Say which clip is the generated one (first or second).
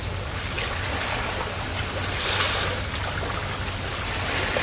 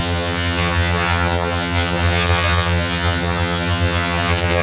second